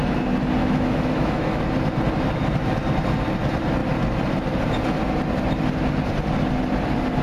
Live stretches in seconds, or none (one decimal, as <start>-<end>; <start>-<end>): 0.0-0.6; 1.6-7.2